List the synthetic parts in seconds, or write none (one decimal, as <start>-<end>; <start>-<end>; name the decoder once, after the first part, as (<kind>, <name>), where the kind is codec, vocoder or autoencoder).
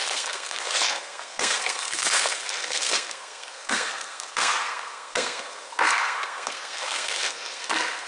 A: 0.0-8.1 (codec, SNAC)